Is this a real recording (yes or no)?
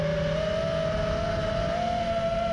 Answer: yes